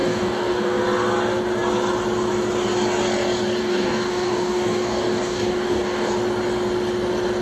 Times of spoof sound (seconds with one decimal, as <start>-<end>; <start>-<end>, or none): 0.0-0.8; 3.6-6.1